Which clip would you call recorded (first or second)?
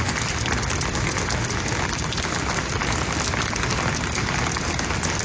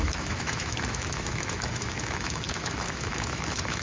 first